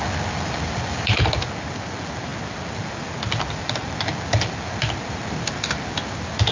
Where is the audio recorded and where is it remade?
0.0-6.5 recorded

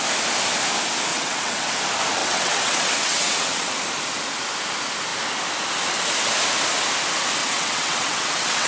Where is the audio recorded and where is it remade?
0.0-1.1 recorded; 1.1-1.7 remade; 1.7-2.2 recorded; 2.2-3.7 remade; 3.7-7.4 recorded; 7.4-8.7 remade